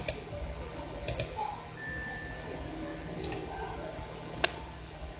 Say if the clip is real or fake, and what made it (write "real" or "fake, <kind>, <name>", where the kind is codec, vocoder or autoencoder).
real